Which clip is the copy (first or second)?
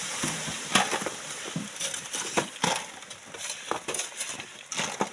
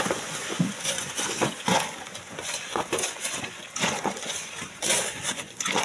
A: second